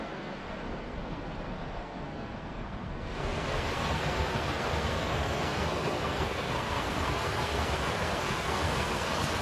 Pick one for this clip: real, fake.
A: fake